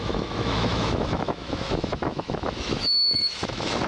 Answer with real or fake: fake